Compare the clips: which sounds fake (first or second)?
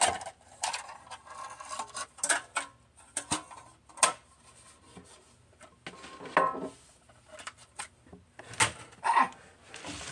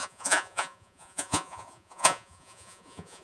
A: second